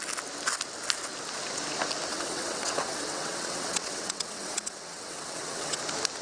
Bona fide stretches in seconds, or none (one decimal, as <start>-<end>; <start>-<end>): 0.0-2.1; 5.8-6.2

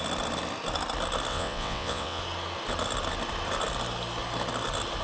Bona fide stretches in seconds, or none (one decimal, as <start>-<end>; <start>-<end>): 0.0-1.3; 2.2-5.0

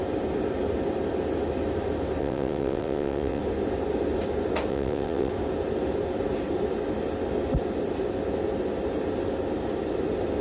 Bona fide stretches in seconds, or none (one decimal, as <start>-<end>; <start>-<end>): 0.0-2.2; 3.4-4.7; 5.3-10.4

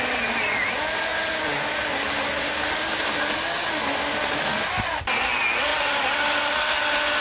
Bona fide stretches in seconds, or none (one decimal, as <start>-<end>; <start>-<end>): 0.0-7.2

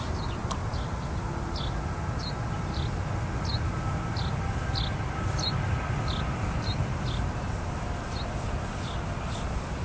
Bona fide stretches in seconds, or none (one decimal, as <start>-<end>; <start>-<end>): 0.0-9.8

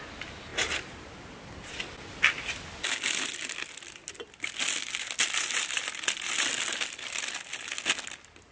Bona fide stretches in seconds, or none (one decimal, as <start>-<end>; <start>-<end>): 0.0-8.5

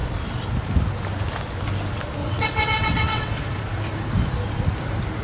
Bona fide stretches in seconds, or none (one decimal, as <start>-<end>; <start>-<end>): 0.0-2.2; 3.3-5.2

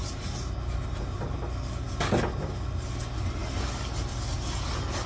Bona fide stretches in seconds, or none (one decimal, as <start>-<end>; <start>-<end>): 0.0-5.1